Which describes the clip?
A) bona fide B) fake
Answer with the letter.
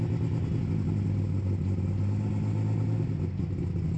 A